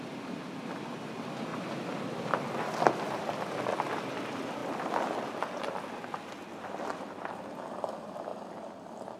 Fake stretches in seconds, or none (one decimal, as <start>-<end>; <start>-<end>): 1.5-2.0

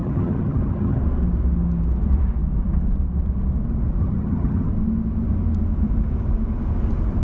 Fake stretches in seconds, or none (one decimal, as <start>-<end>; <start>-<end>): 0.0-1.0; 4.0-4.7